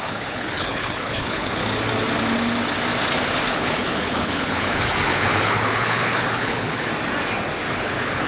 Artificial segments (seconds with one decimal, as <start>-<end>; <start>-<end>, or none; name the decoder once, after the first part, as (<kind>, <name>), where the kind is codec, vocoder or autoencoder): 0.0-1.6 (codec, HILCodec); 3.5-6.9; 7.8-8.3